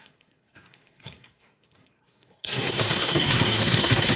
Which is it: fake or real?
fake